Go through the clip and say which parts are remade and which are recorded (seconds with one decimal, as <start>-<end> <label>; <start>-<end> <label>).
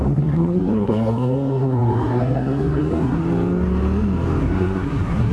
0.0-3.2 remade; 3.2-4.4 recorded; 4.4-5.3 remade